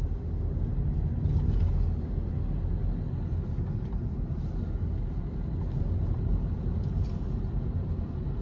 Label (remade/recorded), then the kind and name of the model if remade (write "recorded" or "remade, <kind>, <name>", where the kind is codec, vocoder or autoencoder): recorded